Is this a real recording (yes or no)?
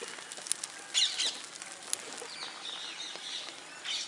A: yes